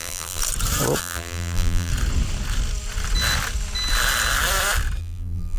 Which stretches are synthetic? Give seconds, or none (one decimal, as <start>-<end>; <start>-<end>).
0.0-0.4; 1.0-1.9; 5.0-5.6